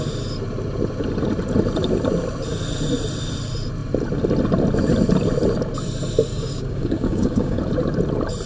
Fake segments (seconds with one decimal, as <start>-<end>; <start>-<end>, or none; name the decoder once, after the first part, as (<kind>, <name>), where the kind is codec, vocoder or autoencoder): 6.3-7.6 (codec, DAC)